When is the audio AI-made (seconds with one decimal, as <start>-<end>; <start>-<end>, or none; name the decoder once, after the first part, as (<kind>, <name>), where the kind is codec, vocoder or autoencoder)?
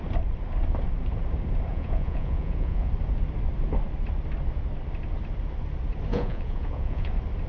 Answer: 1.7-2.9 (vocoder, Vocos); 6.1-7.1